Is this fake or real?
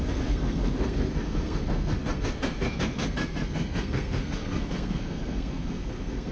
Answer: fake